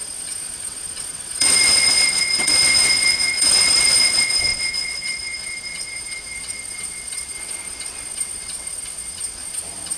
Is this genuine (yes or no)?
no